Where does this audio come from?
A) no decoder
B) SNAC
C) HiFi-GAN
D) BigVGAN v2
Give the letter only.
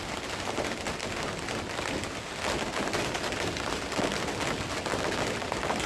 A